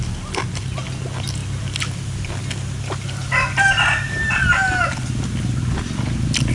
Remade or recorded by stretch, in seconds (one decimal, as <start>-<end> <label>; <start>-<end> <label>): 0.0-6.5 recorded